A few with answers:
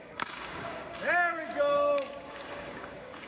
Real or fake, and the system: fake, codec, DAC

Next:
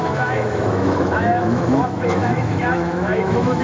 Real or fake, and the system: fake, autoencoder, DAC-VAE